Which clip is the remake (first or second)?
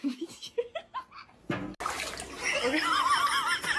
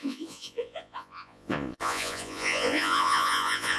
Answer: second